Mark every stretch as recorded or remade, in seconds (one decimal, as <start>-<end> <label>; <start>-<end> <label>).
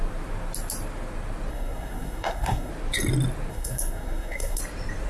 0.0-1.5 recorded; 1.5-2.7 remade; 2.7-3.5 recorded; 3.5-4.6 remade; 4.6-5.1 recorded